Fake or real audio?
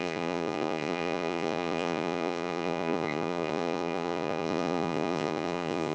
fake